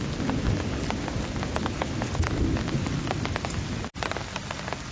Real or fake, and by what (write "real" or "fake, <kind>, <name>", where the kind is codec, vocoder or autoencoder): real